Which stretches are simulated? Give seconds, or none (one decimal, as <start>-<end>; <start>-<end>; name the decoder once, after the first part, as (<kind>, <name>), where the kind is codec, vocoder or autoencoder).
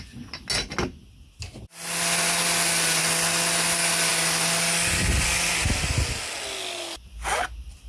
none